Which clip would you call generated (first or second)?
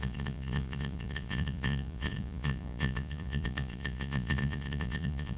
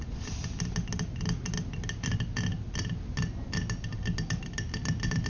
first